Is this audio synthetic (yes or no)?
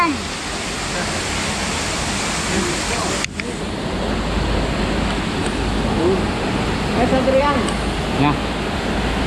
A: no